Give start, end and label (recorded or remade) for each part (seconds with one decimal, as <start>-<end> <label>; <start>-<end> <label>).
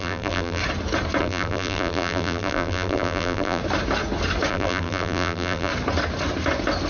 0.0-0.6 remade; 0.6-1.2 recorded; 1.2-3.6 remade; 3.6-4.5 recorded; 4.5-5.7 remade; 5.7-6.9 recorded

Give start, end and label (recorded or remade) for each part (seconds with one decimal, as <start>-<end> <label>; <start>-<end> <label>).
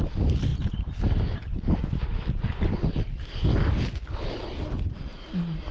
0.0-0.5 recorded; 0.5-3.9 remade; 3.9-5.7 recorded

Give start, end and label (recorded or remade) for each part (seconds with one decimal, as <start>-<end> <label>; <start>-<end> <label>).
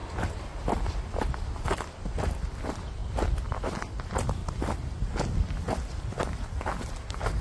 0.0-7.4 remade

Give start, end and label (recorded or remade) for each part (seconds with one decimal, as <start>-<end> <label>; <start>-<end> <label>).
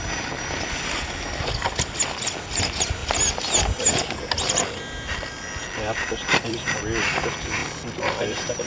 0.0-6.3 recorded; 6.3-6.8 remade; 6.8-7.6 recorded; 7.6-8.7 remade